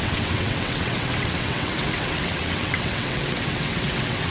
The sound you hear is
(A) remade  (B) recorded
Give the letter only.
A